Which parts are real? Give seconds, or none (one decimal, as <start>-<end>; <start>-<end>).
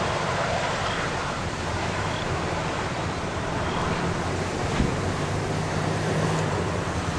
3.8-5.7